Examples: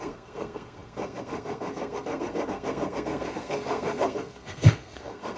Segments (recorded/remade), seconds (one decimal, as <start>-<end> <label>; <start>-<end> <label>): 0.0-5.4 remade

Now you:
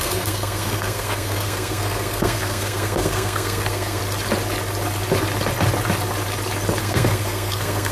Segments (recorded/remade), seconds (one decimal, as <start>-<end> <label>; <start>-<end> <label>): 0.0-4.0 remade; 4.0-6.8 recorded; 6.8-7.9 remade

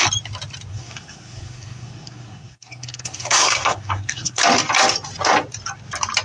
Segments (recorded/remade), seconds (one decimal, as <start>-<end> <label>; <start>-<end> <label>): 0.0-0.7 recorded; 0.7-4.4 remade; 4.4-6.2 recorded

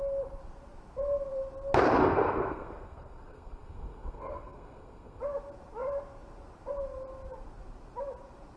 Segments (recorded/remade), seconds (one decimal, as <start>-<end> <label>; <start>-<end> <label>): 0.0-2.0 recorded; 2.0-5.2 remade; 5.2-8.6 recorded